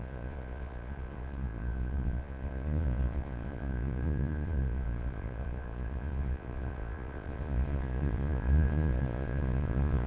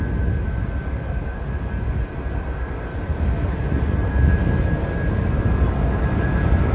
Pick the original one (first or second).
second